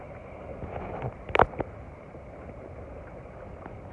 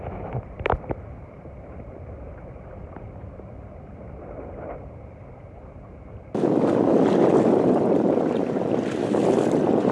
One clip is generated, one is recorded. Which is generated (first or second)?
second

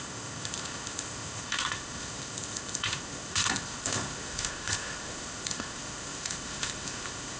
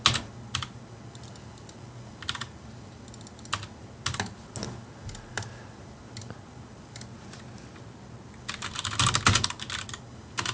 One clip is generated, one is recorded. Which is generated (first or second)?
first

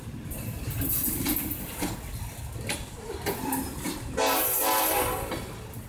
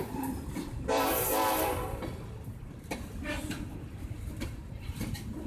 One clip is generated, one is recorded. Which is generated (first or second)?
second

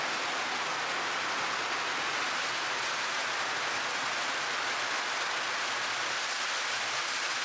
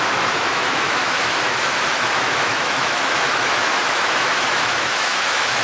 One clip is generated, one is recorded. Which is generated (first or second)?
second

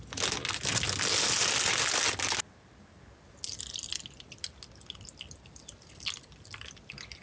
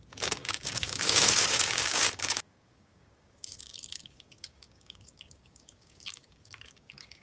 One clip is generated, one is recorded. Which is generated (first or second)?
second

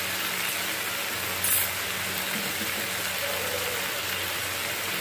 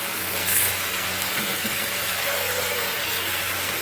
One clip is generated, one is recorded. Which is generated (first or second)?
second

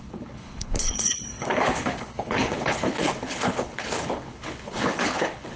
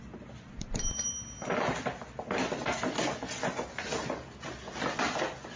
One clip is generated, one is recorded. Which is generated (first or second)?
first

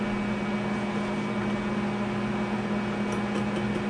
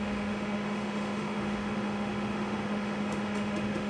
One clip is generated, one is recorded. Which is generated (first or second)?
second